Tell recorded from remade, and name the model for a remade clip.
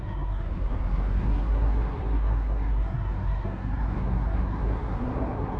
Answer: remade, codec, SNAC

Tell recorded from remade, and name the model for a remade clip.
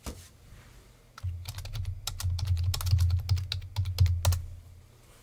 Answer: recorded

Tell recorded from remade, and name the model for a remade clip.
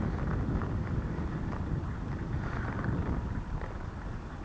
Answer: recorded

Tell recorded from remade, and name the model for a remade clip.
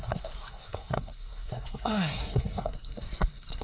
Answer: remade, codec, SNAC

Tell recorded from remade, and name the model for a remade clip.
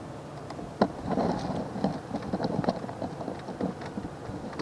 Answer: recorded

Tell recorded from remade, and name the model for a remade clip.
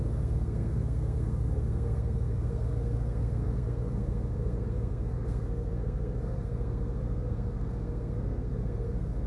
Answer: remade, codec, SNAC